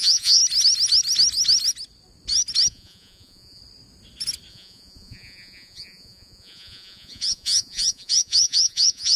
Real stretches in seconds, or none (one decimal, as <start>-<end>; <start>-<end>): 0.4-2.7; 3.6-4.5